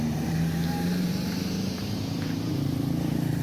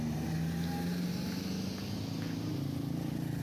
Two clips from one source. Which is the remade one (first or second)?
first